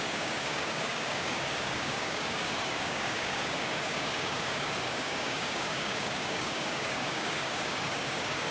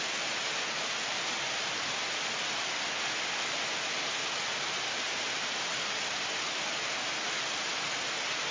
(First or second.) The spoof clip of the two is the first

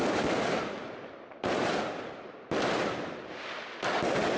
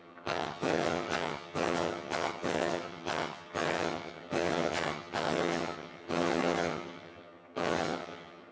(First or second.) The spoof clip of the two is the second